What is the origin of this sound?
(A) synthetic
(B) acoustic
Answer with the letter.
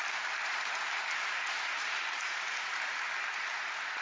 B